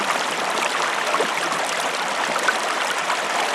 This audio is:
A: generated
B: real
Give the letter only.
B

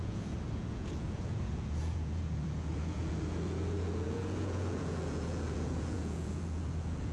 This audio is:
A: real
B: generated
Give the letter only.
B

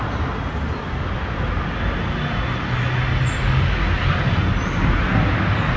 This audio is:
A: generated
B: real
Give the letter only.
B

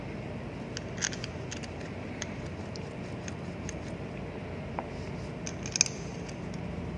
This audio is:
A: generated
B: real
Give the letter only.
B